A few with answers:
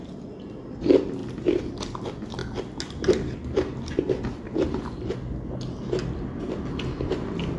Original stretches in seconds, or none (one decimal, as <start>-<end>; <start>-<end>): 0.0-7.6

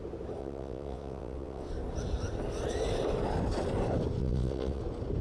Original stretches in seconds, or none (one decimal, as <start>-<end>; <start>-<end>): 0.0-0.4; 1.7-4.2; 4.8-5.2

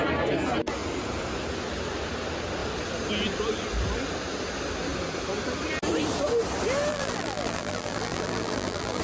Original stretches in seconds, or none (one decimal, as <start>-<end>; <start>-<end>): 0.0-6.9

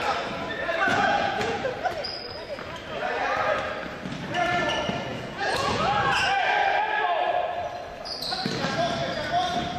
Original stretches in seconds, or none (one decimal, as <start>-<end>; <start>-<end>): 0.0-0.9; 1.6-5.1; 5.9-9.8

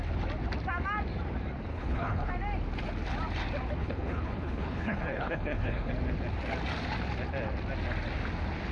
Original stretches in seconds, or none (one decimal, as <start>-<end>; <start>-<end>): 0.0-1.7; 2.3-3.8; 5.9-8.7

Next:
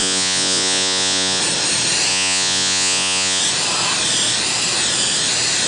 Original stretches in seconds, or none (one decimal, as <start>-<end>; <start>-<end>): 1.4-2.1; 3.4-5.7